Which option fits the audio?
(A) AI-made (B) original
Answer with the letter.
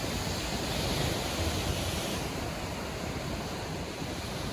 B